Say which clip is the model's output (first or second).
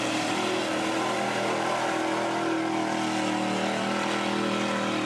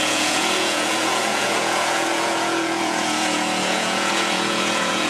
second